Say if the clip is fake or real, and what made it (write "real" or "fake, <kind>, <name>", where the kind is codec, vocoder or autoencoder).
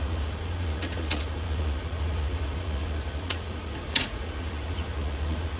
fake, vocoder, Vocos